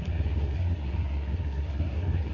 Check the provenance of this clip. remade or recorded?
remade